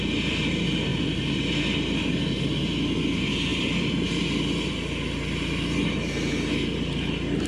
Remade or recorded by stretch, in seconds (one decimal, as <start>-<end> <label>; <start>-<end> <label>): 0.0-0.9 recorded; 0.9-1.5 remade; 1.5-3.5 recorded; 3.5-4.1 remade; 4.1-7.5 recorded